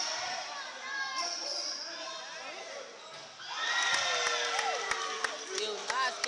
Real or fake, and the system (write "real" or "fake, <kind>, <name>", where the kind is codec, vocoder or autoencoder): real